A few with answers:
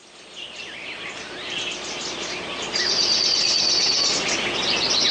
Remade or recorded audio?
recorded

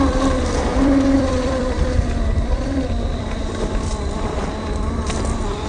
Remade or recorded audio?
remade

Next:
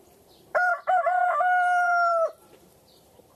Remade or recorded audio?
remade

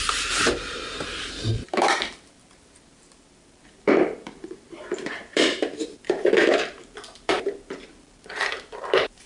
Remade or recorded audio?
remade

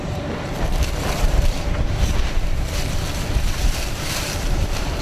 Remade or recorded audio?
remade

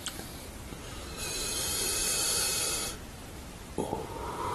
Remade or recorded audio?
remade